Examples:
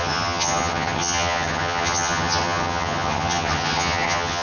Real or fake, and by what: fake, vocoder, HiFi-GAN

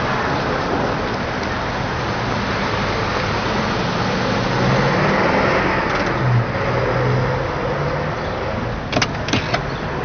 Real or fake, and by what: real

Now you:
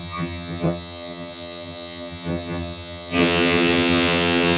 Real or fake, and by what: fake, vocoder, HiFi-GAN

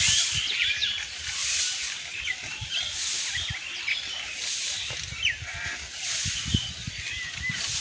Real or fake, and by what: real